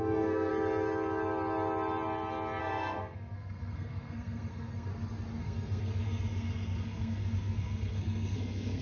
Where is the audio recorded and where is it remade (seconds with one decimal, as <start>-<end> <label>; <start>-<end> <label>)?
0.0-0.5 remade; 0.5-2.6 recorded; 2.6-4.9 remade; 4.9-5.4 recorded; 5.4-8.8 remade